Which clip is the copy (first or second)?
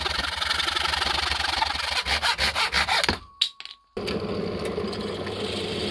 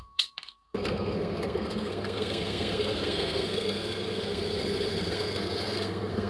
second